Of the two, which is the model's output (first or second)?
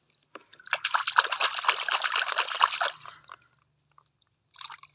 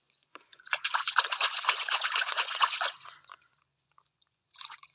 second